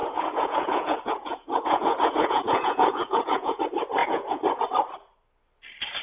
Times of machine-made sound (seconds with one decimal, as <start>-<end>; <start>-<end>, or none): 0.0-3.6; 4.0-4.6